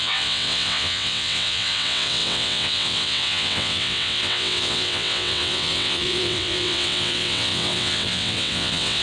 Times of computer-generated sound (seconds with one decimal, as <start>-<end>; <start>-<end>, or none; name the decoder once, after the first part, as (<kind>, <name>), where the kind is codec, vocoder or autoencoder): 0.0-9.0 (vocoder, WaveNeXt)

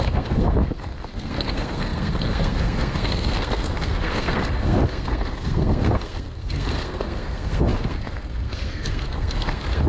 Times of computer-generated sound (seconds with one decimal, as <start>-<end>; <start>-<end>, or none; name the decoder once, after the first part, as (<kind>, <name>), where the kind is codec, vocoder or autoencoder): 0.0-9.9 (codec, SNAC)

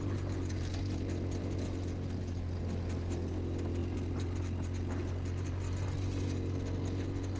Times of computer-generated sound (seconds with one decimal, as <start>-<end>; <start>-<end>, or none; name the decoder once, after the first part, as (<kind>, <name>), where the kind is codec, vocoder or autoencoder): none